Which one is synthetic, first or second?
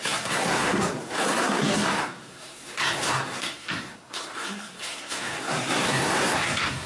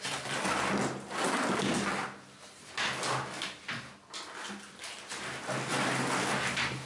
first